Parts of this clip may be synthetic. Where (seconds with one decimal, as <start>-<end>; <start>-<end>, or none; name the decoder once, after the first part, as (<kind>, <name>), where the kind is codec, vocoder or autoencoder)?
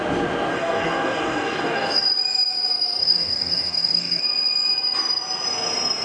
0.5-2.0 (codec, DAC); 3.0-4.2